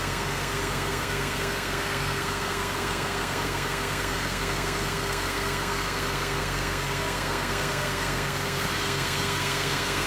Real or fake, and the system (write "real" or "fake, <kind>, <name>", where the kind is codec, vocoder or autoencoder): fake, codec, SNAC